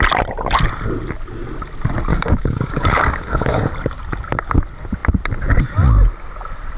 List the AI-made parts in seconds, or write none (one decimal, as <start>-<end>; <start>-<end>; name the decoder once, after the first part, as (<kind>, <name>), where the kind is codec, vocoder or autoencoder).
2.1-3.7 (codec, DAC)